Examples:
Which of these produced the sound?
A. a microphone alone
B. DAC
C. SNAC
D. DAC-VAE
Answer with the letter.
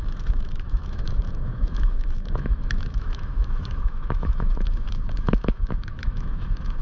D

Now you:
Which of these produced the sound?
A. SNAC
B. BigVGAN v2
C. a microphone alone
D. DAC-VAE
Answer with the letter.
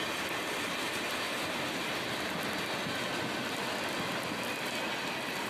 C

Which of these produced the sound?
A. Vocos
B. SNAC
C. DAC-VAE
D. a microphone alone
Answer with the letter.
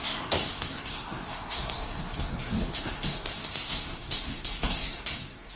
B